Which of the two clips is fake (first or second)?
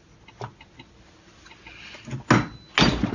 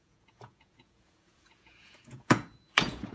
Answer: second